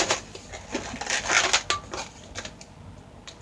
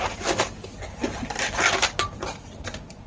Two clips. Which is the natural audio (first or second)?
first